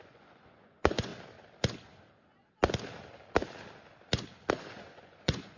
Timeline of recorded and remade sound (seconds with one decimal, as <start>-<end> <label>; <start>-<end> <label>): 0.0-1.1 remade; 1.1-4.5 recorded; 4.5-5.6 remade